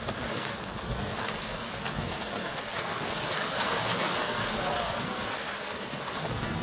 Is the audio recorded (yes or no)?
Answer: no